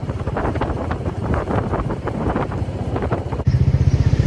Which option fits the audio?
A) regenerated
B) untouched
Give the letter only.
A